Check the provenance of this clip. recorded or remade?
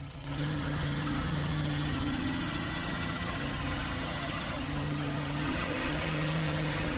remade